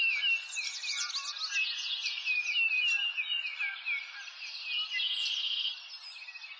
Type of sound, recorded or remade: recorded